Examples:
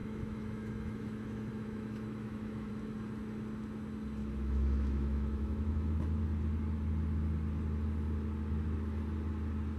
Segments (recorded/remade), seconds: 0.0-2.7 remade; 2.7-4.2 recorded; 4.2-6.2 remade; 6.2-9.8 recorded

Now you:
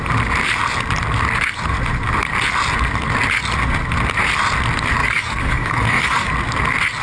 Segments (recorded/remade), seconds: 0.0-5.0 recorded; 5.0-6.3 remade; 6.3-7.0 recorded

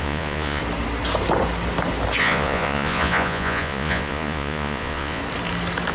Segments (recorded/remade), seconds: 0.0-0.6 remade; 0.6-2.2 recorded; 2.2-5.2 remade; 5.2-5.9 recorded

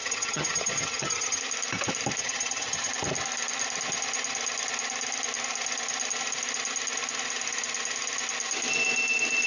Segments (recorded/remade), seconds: 0.0-1.4 remade; 1.4-2.2 recorded; 2.2-2.9 remade; 2.9-9.5 recorded

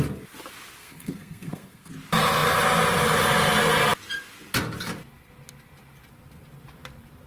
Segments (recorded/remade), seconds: 0.0-0.8 recorded; 0.8-1.9 remade; 1.9-7.3 recorded

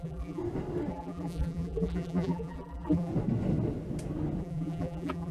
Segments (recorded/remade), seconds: 0.0-0.4 remade; 0.4-0.9 recorded; 0.9-3.1 remade; 3.1-4.4 recorded; 4.4-5.3 remade

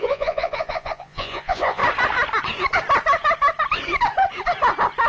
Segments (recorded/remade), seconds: 0.0-1.8 remade; 1.8-5.1 recorded